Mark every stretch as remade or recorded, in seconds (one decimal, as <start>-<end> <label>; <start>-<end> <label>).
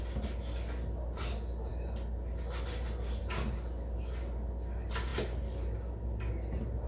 0.0-6.9 recorded